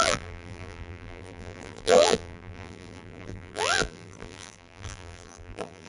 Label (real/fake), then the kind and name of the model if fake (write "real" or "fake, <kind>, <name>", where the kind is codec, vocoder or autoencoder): fake, vocoder, BigVGAN v2